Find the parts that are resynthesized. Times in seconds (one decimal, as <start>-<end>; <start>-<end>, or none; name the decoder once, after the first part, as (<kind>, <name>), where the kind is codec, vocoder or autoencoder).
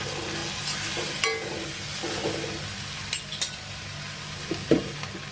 none